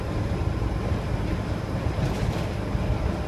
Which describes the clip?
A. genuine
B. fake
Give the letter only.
A